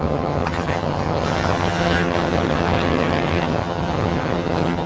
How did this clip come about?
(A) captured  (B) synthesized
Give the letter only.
B